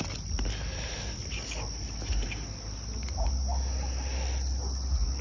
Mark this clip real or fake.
real